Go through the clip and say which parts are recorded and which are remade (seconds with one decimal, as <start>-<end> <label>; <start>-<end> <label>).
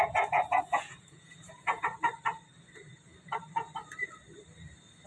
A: 0.0-1.9 remade; 1.9-5.1 recorded